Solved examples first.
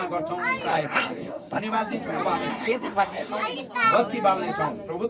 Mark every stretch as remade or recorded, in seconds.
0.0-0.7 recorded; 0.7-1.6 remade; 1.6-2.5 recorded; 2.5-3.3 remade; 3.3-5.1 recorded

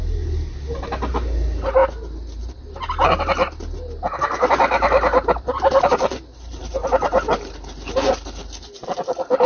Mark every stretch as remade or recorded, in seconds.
0.0-9.5 recorded